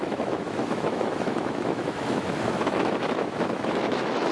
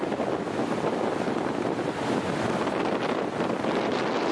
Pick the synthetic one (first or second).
first